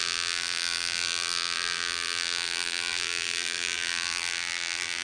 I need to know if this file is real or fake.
fake